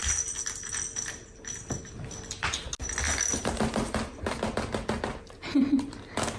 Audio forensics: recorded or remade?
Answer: recorded